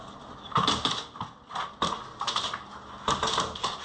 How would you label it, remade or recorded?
recorded